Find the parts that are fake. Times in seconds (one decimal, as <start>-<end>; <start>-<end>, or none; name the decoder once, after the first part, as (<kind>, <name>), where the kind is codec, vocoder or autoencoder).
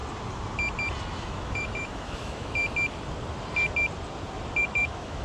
1.2-2.6 (autoencoder, DAC-VAE); 4.6-5.2